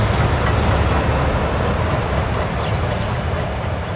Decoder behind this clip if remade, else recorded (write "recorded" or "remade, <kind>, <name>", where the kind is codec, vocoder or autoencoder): recorded